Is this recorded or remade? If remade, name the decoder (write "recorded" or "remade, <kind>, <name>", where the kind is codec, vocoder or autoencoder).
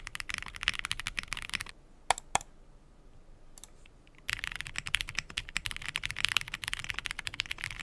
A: recorded